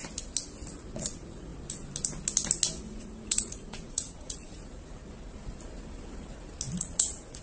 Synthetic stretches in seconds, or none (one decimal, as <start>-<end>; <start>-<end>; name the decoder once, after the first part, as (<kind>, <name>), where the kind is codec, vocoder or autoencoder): 0.7-1.5 (vocoder, Vocos); 2.8-5.0; 6.8-7.4